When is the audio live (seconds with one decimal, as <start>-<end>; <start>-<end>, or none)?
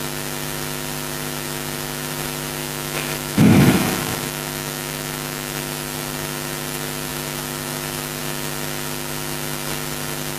0.0-2.6; 5.6-10.4